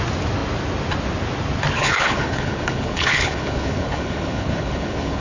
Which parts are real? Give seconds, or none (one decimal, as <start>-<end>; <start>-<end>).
0.0-1.8